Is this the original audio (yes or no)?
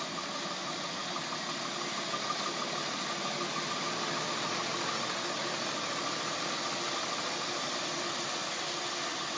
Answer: yes